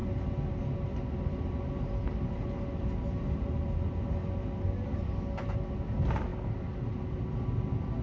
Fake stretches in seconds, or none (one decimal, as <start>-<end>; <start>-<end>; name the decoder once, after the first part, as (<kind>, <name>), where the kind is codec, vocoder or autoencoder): none